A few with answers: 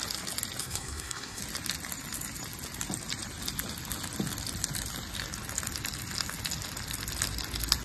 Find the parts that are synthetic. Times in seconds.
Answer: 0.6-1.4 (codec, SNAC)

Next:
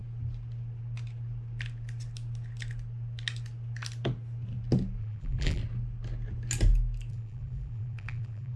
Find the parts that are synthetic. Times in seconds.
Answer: 5.0-5.6 (vocoder, BigVGAN v2); 7.1-8.6

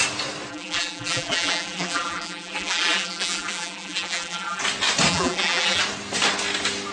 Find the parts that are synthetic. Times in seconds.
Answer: 0.5-4.6 (vocoder, BigVGAN v2); 5.1-5.8

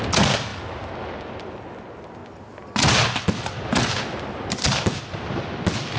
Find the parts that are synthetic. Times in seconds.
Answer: none

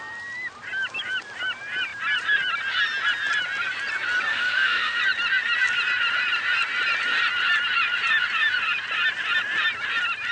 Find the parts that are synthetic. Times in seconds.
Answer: 4.3-5.0 (autoencoder, DAC-VAE)

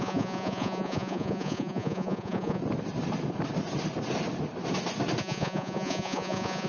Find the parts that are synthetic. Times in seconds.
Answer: 0.0-2.6 (vocoder, Vocos); 5.2-6.7